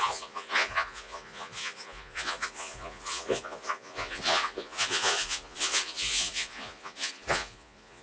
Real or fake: fake